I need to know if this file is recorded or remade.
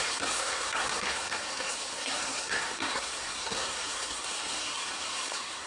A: remade